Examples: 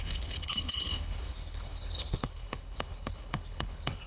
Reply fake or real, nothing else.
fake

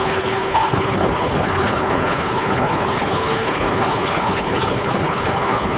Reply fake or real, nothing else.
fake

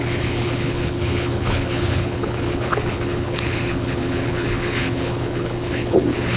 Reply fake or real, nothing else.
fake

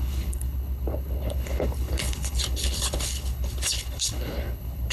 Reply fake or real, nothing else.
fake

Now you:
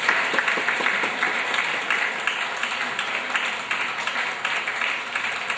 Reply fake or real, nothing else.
real